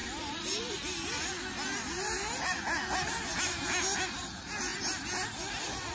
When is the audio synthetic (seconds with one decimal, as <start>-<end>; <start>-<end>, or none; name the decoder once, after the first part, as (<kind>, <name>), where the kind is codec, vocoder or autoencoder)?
none